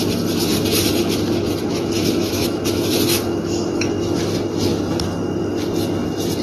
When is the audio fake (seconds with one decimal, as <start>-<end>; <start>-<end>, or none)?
1.7-4.2